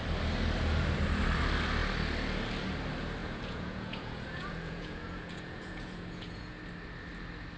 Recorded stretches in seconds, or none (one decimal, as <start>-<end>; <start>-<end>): 0.0-3.2; 6.6-7.6